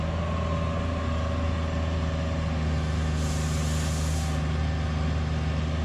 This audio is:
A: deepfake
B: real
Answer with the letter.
B